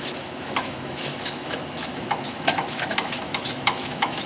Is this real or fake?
fake